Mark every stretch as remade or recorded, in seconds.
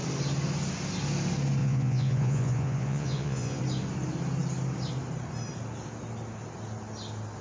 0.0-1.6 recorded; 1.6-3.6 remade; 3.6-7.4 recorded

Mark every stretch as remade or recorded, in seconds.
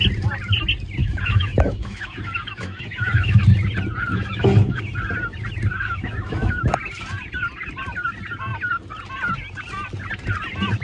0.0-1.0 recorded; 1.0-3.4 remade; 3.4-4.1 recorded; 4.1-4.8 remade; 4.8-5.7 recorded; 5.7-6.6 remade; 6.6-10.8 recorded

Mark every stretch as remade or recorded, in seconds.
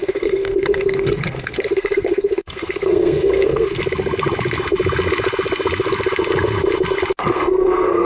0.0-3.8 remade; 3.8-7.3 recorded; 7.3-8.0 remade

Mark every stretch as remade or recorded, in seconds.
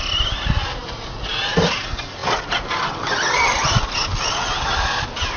0.0-5.4 recorded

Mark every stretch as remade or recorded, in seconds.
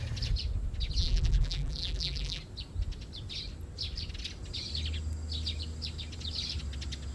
0.0-1.0 recorded; 1.0-2.4 remade; 2.4-7.1 recorded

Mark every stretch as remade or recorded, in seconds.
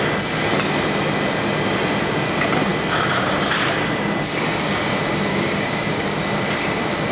0.0-5.3 recorded; 5.3-6.2 remade; 6.2-7.1 recorded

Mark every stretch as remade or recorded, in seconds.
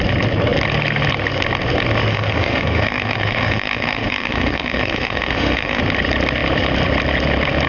0.0-2.1 recorded; 2.1-5.8 remade; 5.8-7.7 recorded